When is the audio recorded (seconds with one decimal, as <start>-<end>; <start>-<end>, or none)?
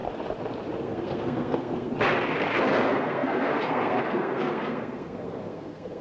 0.0-0.8; 1.9-2.7